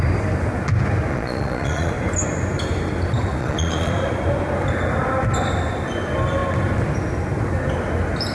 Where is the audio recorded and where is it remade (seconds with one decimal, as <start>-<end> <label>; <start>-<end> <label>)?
0.0-1.1 recorded; 1.1-1.9 remade; 1.9-3.4 recorded; 3.4-3.9 remade; 3.9-8.3 recorded